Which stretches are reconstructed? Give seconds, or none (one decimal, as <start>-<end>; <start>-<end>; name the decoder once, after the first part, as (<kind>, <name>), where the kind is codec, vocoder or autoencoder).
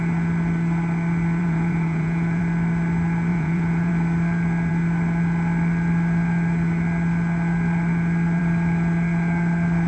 1.4-2.4 (vocoder, Vocos); 3.3-3.9